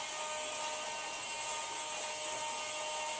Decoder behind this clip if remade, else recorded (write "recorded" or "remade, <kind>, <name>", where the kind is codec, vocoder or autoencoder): recorded